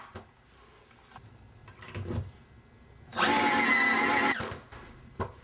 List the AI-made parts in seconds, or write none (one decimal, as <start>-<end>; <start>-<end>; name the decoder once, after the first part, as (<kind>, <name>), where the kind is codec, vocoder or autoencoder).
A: none